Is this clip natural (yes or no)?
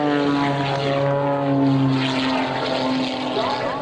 yes